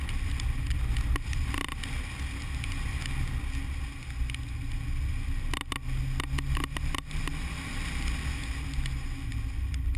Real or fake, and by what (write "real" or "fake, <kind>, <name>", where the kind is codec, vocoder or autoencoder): real